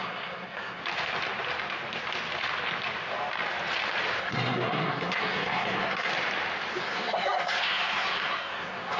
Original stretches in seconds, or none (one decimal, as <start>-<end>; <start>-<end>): 0.8-4.2; 6.1-6.8